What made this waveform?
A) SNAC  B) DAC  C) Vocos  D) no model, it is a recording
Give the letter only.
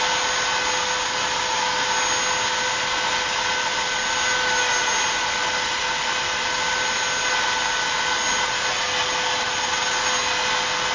D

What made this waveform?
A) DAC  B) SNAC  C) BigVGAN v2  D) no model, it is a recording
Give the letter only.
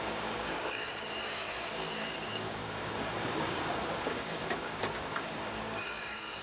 A